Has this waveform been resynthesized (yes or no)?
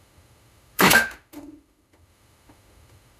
yes